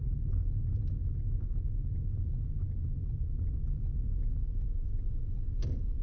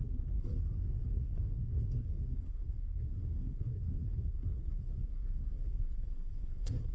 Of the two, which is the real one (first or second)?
first